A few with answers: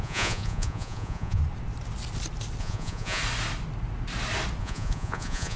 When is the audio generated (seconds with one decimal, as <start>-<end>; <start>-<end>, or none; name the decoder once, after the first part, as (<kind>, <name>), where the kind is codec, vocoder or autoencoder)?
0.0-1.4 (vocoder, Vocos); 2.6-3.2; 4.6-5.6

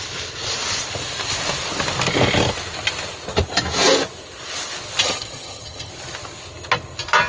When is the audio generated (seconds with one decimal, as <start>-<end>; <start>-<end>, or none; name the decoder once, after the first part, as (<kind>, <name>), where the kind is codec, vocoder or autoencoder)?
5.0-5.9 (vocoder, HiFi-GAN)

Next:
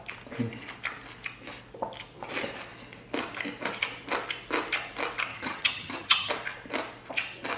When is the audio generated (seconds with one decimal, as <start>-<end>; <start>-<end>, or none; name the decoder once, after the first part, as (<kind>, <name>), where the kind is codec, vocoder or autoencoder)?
5.3-6.3 (vocoder, HiFi-GAN)

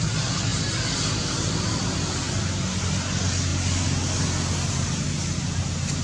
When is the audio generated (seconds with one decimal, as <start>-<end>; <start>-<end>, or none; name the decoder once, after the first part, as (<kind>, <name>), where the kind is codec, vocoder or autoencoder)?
none

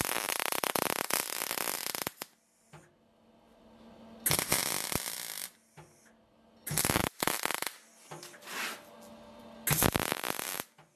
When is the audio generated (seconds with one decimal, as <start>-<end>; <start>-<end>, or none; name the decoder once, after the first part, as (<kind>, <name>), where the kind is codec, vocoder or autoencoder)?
none

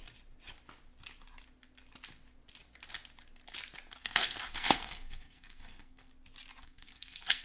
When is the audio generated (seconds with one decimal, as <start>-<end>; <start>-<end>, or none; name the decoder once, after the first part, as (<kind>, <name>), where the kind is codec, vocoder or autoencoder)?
3.9-6.1 (codec, SNAC); 6.6-7.4